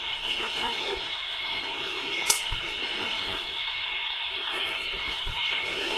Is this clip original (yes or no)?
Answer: no